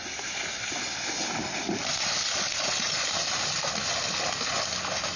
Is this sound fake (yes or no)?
no